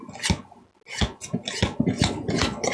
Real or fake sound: real